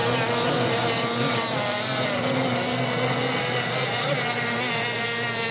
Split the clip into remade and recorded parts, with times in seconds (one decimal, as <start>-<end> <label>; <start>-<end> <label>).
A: 0.0-5.5 recorded